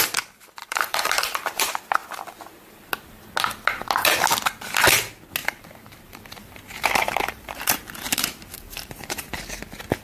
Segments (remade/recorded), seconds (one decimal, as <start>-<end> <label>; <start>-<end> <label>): 0.0-0.6 recorded; 0.6-1.6 remade; 1.6-5.4 recorded; 5.4-9.3 remade; 9.3-10.0 recorded